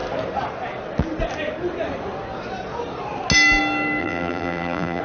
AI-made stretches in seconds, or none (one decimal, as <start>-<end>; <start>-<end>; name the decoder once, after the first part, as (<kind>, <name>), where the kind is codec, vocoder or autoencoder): 4.0-5.0 (vocoder, BigVGAN v2)